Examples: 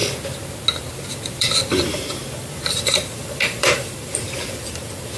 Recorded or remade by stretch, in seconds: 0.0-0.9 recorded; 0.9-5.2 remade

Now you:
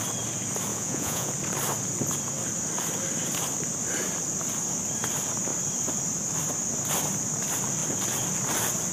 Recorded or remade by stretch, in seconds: 0.0-0.7 recorded; 0.7-1.3 remade; 1.3-8.9 recorded

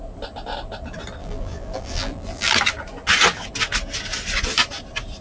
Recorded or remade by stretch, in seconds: 0.0-1.2 recorded; 1.2-2.5 remade; 2.5-5.2 recorded

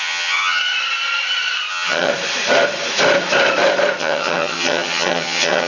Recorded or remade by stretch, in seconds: 0.0-0.6 remade; 0.6-1.7 recorded; 1.7-2.1 remade; 2.1-4.0 recorded; 4.0-5.7 remade